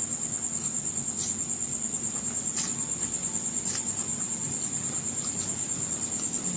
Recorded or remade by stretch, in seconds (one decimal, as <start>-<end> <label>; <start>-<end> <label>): 0.0-6.6 recorded